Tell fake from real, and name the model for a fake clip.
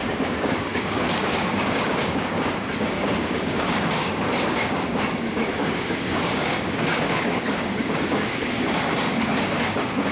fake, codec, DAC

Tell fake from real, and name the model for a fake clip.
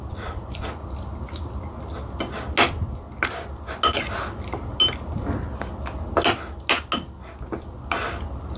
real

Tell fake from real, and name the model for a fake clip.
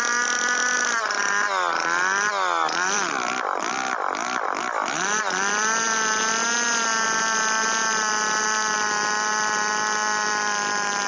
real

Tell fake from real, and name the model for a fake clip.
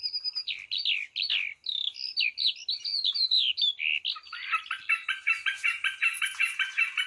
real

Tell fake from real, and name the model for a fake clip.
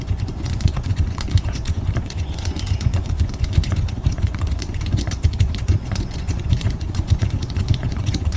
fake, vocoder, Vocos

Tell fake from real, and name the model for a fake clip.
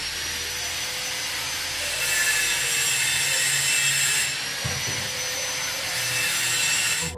real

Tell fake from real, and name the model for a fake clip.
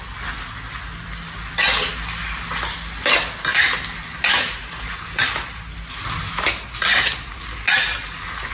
real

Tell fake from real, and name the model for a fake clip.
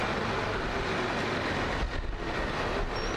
real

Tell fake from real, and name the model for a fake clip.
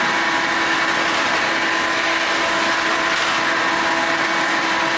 real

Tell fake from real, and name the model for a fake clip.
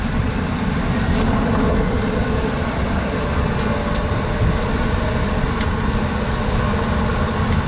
real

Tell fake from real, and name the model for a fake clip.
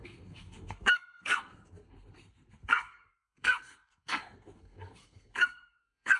fake, codec, SNAC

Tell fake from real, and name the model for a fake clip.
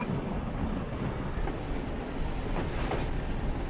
real